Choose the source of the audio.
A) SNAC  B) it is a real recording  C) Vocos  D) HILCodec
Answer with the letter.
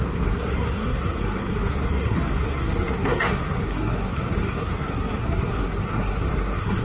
A